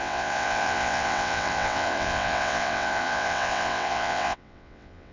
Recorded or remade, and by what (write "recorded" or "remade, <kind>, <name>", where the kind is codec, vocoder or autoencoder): remade, vocoder, WaveNeXt